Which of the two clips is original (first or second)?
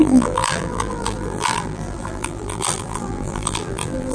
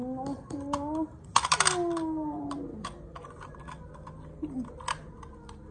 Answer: second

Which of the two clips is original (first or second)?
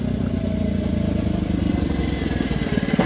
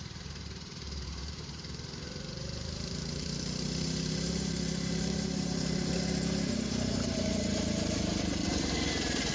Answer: first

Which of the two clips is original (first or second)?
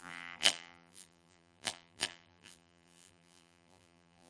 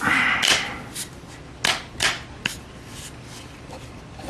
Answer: second